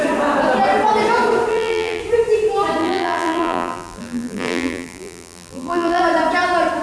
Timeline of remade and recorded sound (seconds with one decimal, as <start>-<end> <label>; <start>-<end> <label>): 0.0-1.5 recorded; 1.5-2.0 remade; 2.0-2.8 recorded; 2.8-6.0 remade; 6.0-6.8 recorded